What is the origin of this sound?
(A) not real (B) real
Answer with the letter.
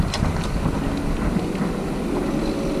B